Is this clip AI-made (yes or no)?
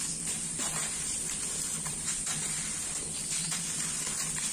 yes